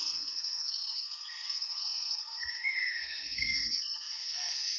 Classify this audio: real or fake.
fake